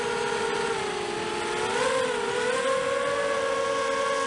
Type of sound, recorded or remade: recorded